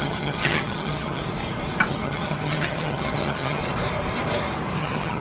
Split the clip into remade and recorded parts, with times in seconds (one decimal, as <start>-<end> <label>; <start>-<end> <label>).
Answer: 0.0-1.2 remade; 1.2-1.9 recorded; 1.9-3.6 remade; 3.6-4.8 recorded; 4.8-5.2 remade